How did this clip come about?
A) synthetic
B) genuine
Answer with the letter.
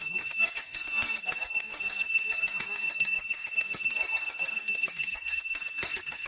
A